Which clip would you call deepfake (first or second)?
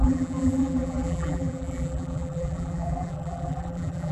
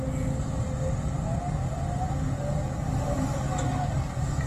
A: first